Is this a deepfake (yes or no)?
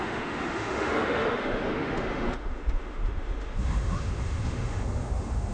yes